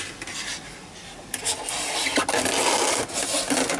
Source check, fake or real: real